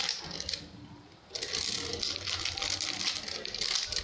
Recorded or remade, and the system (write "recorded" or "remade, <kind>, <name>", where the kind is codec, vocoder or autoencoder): recorded